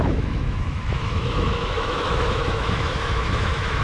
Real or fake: fake